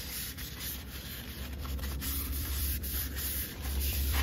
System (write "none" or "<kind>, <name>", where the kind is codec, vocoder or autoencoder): vocoder, BigVGAN v2